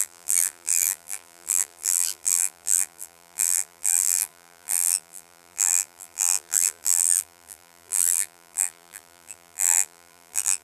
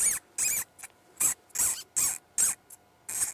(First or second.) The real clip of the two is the second